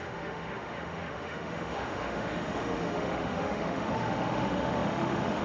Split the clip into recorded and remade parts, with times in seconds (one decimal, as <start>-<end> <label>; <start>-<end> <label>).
0.0-5.4 remade

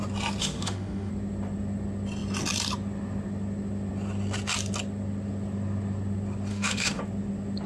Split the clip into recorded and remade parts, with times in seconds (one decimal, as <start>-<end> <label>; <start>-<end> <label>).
0.0-0.4 recorded; 0.4-1.1 remade; 1.1-6.5 recorded; 6.5-7.0 remade; 7.0-7.7 recorded